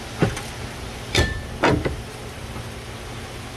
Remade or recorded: recorded